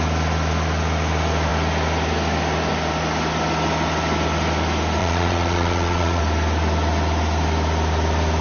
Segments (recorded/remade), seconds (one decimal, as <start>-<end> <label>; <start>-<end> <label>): 0.0-5.0 recorded; 5.0-6.2 remade; 6.2-8.4 recorded